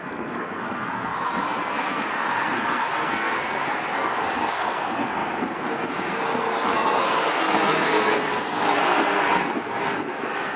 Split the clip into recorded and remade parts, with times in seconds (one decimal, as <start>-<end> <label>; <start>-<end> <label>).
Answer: 0.0-10.6 remade